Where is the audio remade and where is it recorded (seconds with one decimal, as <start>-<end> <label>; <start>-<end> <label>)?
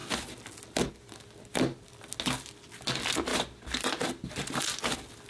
0.0-5.3 recorded